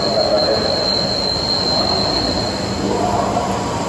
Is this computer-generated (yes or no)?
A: no